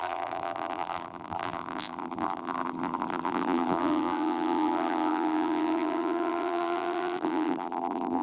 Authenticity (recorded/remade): remade